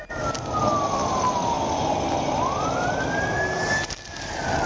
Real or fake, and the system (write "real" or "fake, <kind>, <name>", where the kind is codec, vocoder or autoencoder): real